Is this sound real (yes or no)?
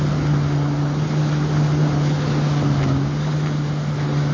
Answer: yes